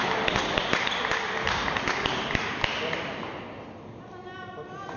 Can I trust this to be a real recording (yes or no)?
yes